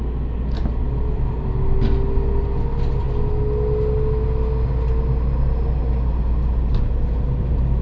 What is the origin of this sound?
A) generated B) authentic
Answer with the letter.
B